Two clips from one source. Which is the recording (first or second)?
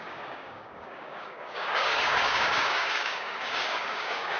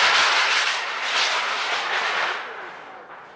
second